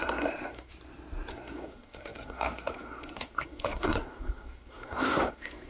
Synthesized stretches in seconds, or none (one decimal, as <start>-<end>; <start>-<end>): 0.0-0.7; 1.3-5.7